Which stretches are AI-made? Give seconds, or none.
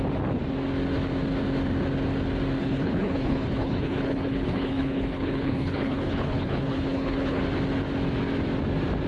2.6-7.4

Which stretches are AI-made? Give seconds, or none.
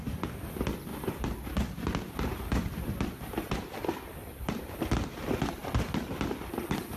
0.9-4.8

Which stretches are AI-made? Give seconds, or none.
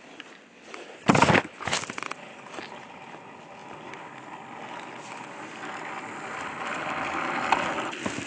none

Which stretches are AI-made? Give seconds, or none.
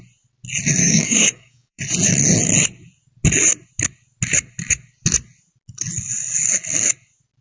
0.8-1.8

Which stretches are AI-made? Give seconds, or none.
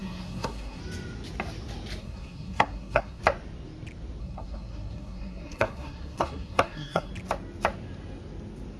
0.0-0.8; 2.0-3.2; 4.2-7.1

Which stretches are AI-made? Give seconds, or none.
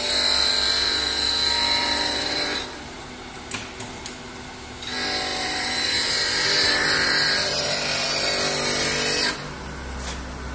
1.8-3.1; 5.3-7.7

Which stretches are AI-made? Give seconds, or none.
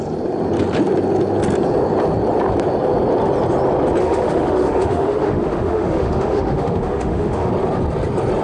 4.0-7.5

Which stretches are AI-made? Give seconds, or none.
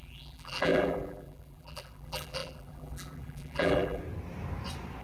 0.0-4.0